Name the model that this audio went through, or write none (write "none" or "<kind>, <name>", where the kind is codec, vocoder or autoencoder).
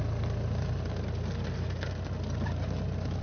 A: none